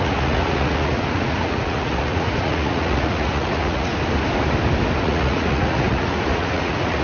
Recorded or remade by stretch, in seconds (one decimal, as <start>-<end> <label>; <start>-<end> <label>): 0.0-3.9 remade; 3.9-5.0 recorded; 5.0-7.0 remade